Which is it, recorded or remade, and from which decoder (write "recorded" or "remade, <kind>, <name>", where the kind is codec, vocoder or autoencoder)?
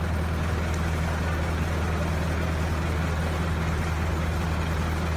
recorded